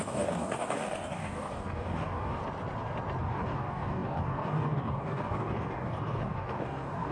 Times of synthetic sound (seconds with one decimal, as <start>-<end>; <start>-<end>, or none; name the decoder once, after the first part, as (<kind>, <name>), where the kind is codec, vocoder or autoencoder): 0.0-2.4 (codec, DAC); 3.2-7.1